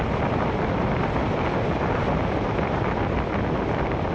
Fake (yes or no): no